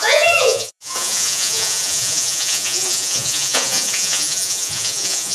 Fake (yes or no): yes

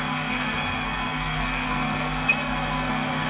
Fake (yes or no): yes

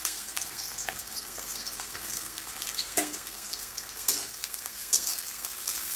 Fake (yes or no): yes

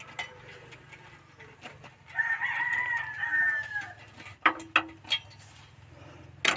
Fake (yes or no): no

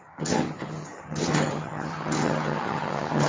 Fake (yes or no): yes